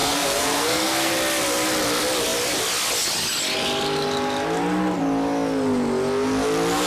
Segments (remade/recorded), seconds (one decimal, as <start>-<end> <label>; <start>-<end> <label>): 0.0-1.1 remade; 1.1-6.9 recorded